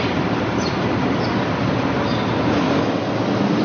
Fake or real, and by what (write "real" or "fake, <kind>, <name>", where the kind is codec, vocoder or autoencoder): fake, vocoder, BigVGAN v2